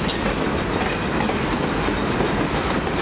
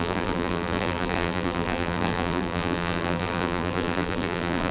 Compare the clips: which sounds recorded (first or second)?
first